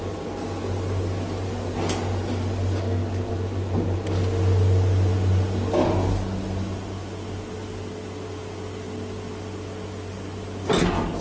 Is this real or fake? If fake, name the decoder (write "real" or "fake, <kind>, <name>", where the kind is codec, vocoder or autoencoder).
real